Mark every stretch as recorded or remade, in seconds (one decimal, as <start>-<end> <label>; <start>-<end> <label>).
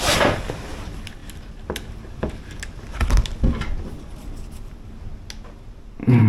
0.0-6.3 recorded